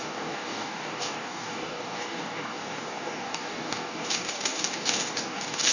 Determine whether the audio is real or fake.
fake